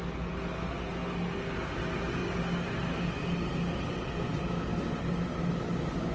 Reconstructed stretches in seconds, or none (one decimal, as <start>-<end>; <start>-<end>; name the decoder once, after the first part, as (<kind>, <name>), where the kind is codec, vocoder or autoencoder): none